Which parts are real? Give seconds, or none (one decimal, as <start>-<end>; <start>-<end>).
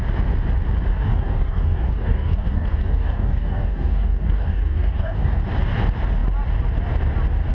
0.0-0.9; 5.4-7.5